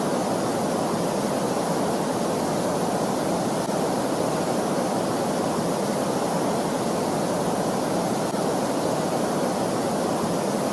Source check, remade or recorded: recorded